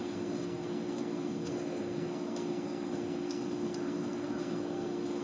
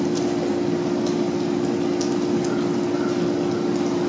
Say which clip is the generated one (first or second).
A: first